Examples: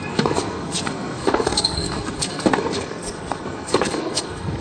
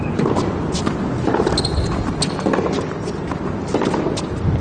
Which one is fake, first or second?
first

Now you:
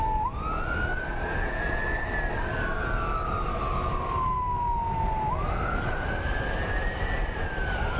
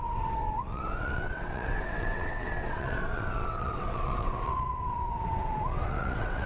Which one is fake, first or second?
second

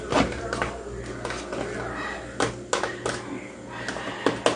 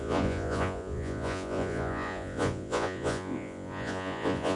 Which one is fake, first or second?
second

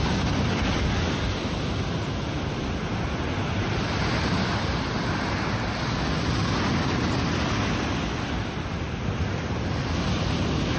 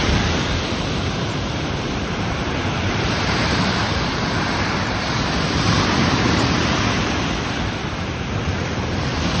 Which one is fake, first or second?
second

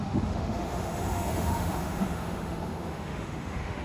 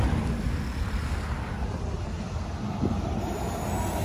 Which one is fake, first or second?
first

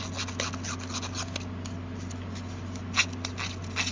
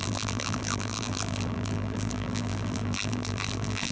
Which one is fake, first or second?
second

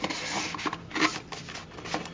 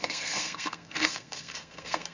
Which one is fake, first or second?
second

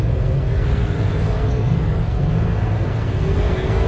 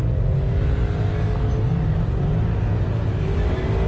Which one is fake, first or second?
first